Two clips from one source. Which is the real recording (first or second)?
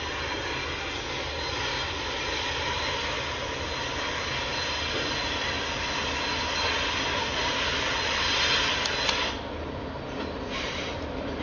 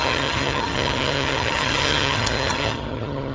first